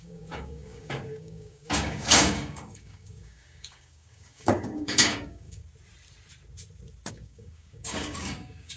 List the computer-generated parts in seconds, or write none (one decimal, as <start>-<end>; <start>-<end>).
0.0-5.6; 7.1-8.8